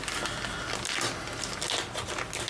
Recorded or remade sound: recorded